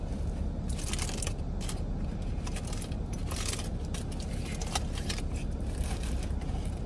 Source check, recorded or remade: recorded